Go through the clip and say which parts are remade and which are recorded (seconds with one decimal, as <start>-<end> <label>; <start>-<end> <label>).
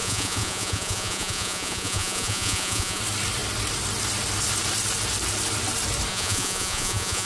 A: 0.0-3.0 remade; 3.0-6.1 recorded; 6.1-7.3 remade